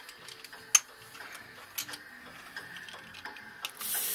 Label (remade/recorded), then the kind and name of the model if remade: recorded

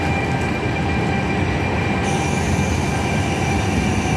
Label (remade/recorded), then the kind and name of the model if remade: recorded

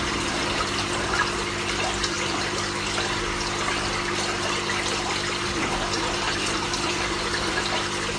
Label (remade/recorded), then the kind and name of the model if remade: recorded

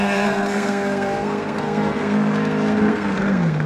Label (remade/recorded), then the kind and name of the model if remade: remade, codec, SNAC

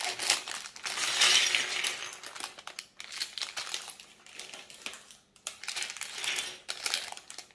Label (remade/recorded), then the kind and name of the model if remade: recorded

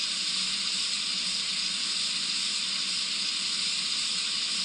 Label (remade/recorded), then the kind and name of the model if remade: recorded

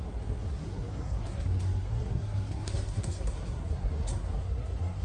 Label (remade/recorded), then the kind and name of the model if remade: remade, codec, SNAC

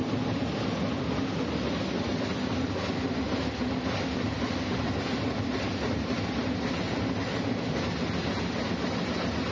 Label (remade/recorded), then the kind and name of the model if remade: recorded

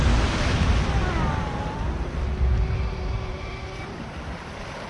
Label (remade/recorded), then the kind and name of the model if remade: recorded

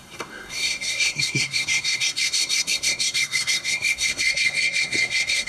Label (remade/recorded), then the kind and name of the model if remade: remade, codec, SNAC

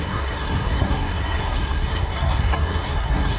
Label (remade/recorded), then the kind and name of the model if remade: remade, codec, SNAC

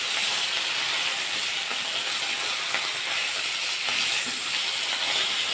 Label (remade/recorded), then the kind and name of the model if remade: recorded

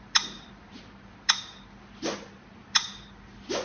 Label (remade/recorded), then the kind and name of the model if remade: recorded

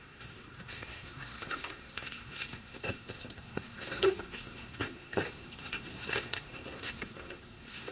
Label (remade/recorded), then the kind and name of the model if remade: remade, codec, SNAC